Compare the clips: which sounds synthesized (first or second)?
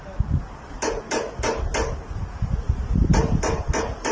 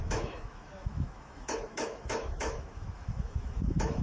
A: second